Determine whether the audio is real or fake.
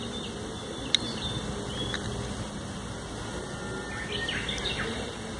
real